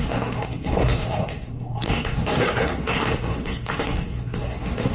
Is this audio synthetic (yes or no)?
yes